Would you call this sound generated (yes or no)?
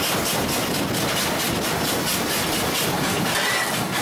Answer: no